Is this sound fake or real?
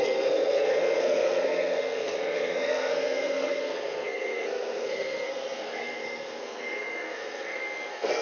fake